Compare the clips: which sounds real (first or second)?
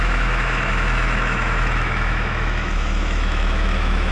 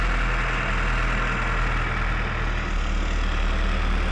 second